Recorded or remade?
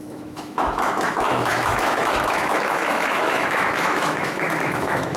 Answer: remade